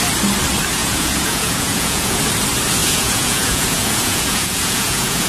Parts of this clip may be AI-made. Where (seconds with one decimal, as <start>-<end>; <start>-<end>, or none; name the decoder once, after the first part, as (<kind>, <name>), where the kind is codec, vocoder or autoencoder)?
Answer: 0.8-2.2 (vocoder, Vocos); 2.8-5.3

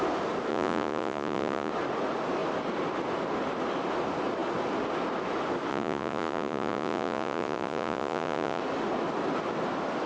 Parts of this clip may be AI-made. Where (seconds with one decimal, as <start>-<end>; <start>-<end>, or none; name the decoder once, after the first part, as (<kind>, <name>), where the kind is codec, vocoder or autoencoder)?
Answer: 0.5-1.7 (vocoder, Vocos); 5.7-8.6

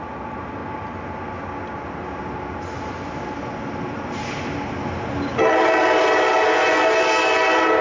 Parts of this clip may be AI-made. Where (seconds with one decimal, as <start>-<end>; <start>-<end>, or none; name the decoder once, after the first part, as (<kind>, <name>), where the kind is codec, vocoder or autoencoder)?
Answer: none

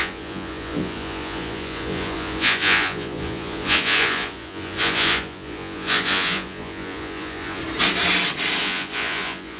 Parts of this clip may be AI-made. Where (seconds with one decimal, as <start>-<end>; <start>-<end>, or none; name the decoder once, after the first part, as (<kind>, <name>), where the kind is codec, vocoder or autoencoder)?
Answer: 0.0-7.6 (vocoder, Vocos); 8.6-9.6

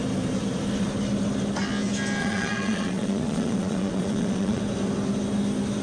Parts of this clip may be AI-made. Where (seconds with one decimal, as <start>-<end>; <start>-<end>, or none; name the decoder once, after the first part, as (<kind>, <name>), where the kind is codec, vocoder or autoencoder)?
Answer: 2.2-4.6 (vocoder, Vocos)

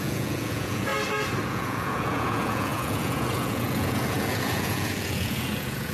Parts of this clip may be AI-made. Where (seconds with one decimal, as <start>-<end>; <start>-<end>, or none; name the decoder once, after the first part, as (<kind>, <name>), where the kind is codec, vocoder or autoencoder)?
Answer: 0.0-0.9 (vocoder, Vocos); 1.5-5.9

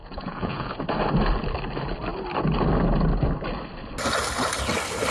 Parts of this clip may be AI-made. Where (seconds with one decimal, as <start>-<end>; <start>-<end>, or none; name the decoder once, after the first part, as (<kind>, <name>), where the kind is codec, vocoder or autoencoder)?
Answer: 0.0-0.7 (vocoder, Vocos)

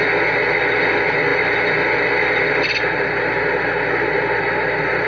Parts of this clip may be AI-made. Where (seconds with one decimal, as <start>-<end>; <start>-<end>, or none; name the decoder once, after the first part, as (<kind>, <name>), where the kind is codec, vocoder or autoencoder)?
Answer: none